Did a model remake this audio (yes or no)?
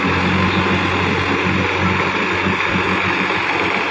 no